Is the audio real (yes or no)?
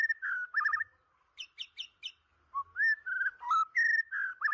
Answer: yes